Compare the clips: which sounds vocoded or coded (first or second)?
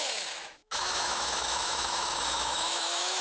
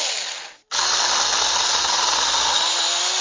first